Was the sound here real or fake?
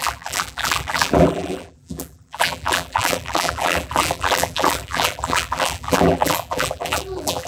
fake